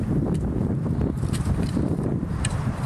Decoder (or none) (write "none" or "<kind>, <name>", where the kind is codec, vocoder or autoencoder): vocoder, BigVGAN v2